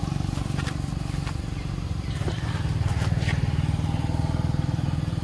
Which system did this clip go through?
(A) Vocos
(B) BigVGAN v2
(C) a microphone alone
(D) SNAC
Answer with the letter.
C